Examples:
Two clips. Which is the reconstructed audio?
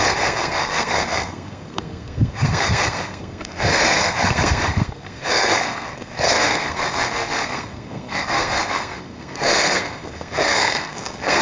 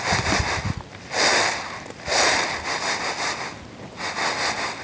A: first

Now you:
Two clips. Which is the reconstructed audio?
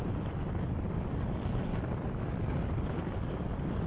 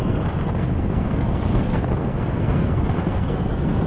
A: second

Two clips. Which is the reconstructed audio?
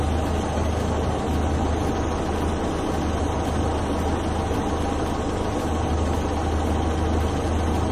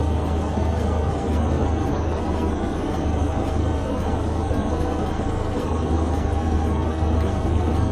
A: second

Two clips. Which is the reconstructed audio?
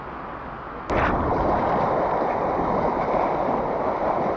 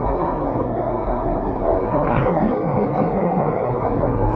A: second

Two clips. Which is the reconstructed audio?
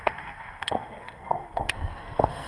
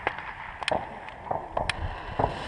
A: first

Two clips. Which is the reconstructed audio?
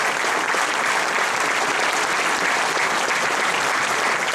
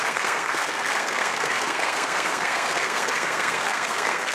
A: second